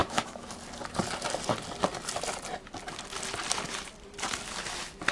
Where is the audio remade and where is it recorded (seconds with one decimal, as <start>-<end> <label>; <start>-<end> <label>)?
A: 0.0-0.5 remade; 0.5-5.1 recorded